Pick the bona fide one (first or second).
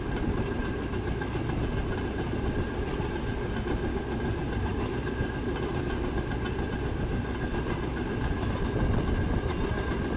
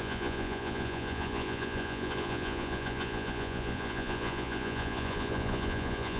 first